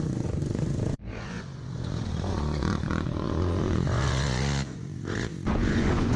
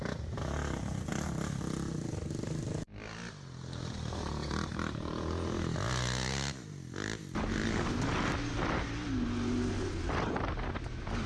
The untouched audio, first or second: second